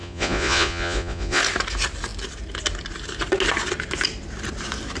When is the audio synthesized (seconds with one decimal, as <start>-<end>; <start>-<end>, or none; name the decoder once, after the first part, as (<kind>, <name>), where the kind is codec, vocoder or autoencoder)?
0.0-1.4 (vocoder, Vocos)

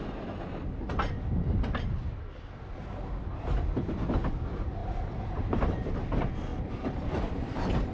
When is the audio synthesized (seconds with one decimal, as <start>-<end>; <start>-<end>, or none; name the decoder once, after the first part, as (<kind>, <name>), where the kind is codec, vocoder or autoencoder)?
4.8-5.9 (vocoder, BigVGAN v2); 6.5-7.9